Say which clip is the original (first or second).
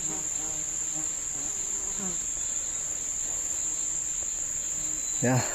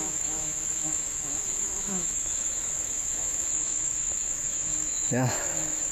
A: first